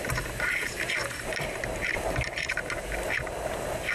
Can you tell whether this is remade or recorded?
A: recorded